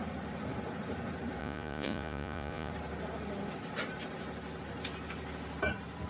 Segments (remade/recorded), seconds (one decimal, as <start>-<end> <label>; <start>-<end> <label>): 0.0-1.4 recorded; 1.4-2.7 remade; 2.7-6.1 recorded